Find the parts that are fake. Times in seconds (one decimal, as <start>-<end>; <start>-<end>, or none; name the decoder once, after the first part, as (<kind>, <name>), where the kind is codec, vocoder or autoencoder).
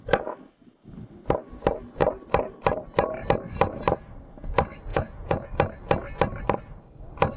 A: 4.9-5.5 (vocoder, Vocos)